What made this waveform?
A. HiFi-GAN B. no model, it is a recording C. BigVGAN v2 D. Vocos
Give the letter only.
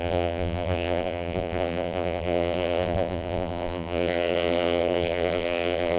C